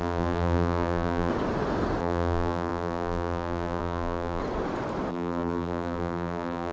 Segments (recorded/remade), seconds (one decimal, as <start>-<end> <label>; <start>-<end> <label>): 0.0-1.3 remade; 1.3-2.0 recorded; 2.0-4.4 remade; 4.4-5.1 recorded; 5.1-6.7 remade

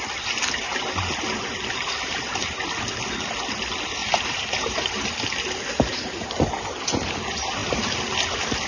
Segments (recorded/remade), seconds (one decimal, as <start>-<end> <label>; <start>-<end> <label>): 0.0-4.0 recorded; 4.0-5.1 remade; 5.1-8.7 recorded

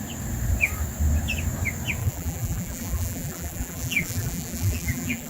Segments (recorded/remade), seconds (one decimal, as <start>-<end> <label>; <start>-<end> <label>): 0.0-2.0 recorded; 2.0-5.3 remade

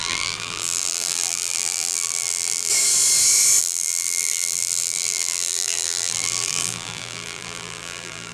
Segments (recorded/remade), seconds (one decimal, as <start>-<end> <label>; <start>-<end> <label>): 0.0-2.7 remade; 2.7-3.6 recorded; 3.6-8.3 remade

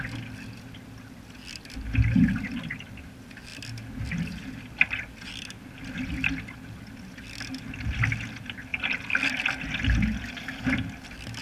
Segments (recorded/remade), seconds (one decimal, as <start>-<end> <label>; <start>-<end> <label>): 0.0-11.4 recorded